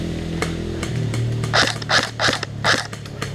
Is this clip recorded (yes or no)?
yes